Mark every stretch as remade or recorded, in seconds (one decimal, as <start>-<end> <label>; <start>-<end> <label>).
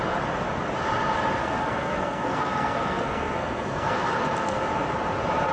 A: 0.0-1.4 recorded; 1.4-4.7 remade; 4.7-5.5 recorded